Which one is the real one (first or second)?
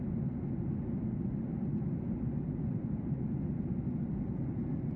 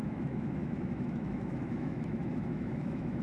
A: first